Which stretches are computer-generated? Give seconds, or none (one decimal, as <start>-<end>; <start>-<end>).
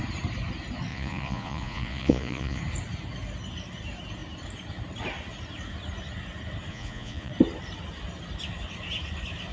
0.9-2.6; 6.7-7.3